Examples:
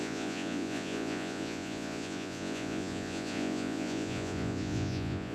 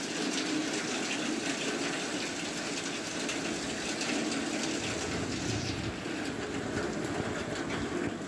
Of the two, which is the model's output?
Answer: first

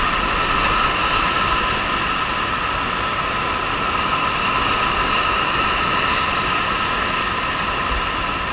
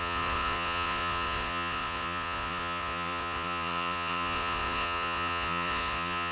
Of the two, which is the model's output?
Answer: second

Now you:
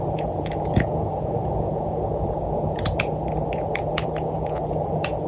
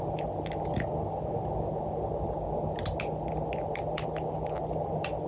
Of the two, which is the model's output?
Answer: first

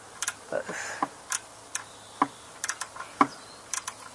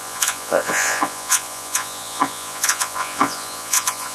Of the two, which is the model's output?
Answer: second